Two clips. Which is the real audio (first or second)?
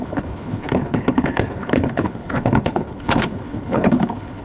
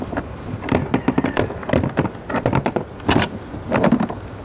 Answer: second